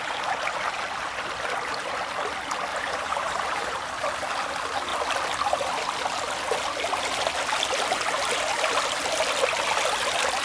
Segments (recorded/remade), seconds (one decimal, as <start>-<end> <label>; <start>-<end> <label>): 0.0-2.7 recorded; 2.7-3.9 remade; 3.9-10.4 recorded